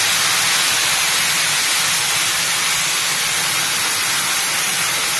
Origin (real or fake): real